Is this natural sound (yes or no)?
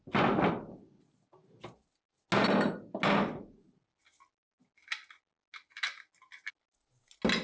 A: yes